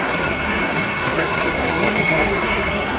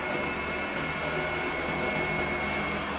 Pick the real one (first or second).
second